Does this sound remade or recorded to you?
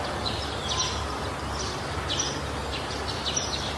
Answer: recorded